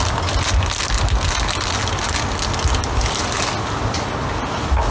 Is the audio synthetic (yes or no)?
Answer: no